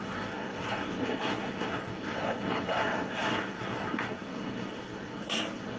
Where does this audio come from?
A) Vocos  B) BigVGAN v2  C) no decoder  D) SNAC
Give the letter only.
D